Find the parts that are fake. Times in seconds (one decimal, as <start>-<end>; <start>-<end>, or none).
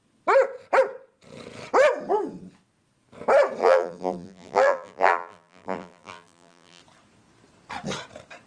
3.6-6.8